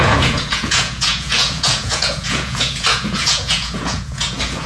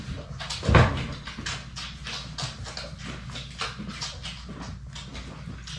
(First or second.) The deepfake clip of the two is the first